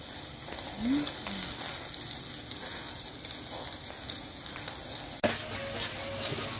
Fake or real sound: real